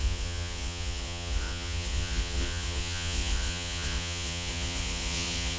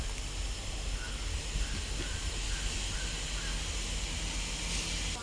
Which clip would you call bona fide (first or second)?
second